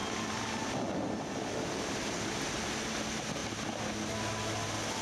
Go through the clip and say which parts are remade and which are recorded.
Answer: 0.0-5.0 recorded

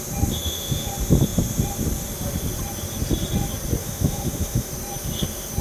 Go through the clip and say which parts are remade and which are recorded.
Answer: 0.0-0.4 recorded; 0.4-0.9 remade; 0.9-3.8 recorded; 3.8-4.7 remade; 4.7-5.6 recorded